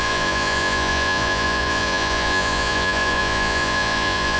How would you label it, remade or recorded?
remade